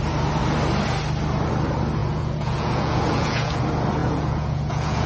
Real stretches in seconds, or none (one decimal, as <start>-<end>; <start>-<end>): 0.0-2.0; 3.6-4.0